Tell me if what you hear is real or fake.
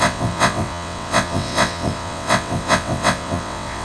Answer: fake